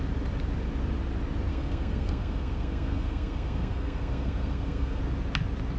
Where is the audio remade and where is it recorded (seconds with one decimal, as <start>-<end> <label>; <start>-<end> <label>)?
0.0-1.5 recorded; 1.5-5.0 remade; 5.0-5.8 recorded